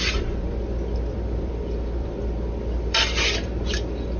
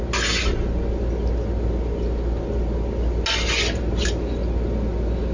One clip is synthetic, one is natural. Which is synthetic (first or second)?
first